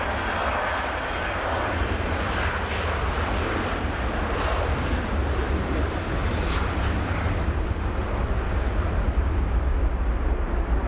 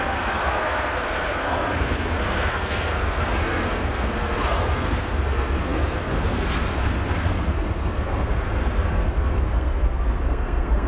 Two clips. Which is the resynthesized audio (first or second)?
second